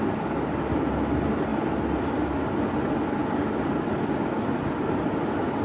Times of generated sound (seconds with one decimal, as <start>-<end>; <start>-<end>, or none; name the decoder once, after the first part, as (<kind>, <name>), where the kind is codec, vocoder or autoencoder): none